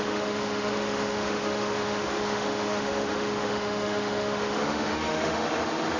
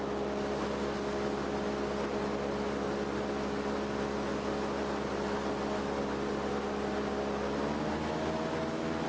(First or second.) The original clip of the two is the second